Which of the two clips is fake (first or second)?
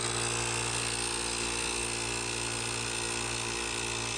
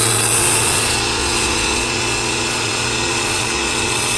second